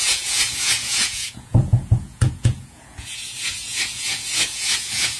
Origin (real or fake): fake